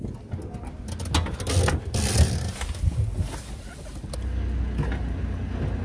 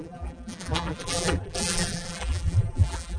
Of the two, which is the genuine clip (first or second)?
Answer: first